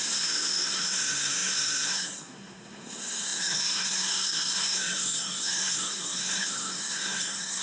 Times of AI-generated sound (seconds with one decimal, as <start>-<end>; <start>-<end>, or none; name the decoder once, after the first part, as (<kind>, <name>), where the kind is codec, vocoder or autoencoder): 0.0-7.6 (codec, SNAC)